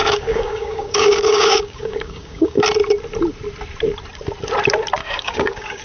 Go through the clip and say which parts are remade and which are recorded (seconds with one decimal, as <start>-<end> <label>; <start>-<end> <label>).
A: 0.0-2.6 remade; 2.6-5.0 recorded; 5.0-5.8 remade